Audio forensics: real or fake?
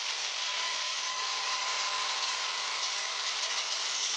fake